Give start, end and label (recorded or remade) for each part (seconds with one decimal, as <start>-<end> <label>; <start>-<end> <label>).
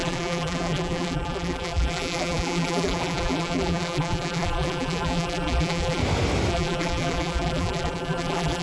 0.0-6.0 remade; 6.0-6.5 recorded; 6.5-8.6 remade